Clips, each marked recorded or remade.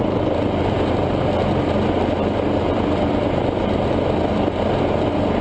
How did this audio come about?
recorded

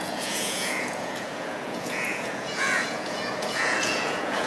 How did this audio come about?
remade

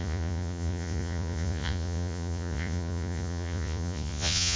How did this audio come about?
remade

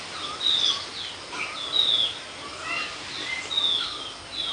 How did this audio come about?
recorded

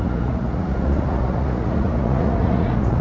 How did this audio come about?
remade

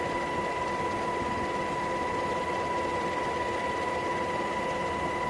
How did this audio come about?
recorded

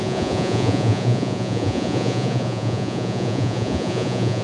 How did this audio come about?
remade